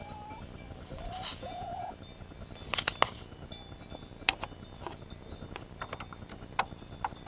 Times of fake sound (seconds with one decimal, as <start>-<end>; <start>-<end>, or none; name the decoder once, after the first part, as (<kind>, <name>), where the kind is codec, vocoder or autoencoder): 1.3-1.9 (vocoder, Vocos)